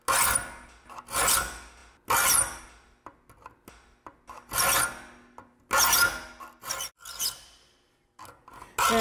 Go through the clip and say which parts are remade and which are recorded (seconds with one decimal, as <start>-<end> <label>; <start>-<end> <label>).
0.0-9.0 recorded